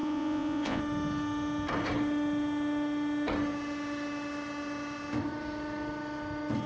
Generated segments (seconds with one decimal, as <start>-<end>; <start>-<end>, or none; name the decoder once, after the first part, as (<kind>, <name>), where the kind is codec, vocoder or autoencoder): 0.0-0.8 (vocoder, Vocos)